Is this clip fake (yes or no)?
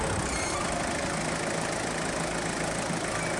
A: no